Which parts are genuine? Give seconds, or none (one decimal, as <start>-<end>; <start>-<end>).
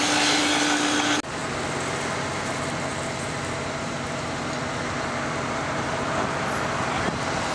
0.0-7.5